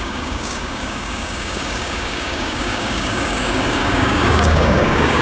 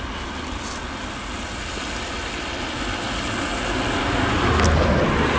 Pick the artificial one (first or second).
first